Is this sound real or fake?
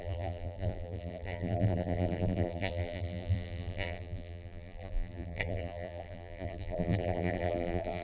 fake